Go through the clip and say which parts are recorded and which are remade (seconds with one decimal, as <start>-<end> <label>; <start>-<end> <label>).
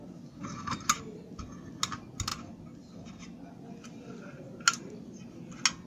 0.0-5.9 recorded